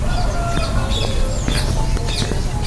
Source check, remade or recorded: recorded